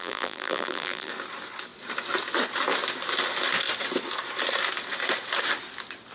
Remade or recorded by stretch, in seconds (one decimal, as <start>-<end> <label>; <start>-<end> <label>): 0.0-1.1 remade; 1.1-6.1 recorded